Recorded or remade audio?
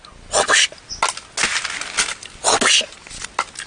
recorded